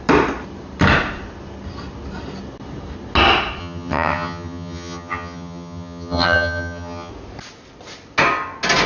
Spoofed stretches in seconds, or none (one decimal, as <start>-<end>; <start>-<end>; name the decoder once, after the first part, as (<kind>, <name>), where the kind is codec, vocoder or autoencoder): 3.6-7.1 (vocoder, HiFi-GAN)